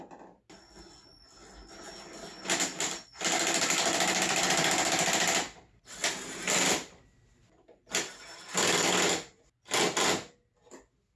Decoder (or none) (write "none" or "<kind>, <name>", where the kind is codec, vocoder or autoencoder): none